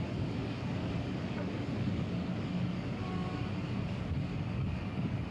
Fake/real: fake